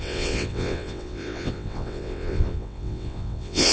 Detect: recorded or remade remade